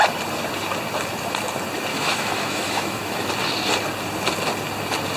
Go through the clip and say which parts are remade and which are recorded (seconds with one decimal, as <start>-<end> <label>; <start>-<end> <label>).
0.0-1.9 recorded; 1.9-3.3 remade; 3.3-5.2 recorded